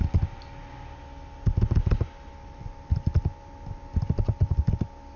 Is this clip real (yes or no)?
yes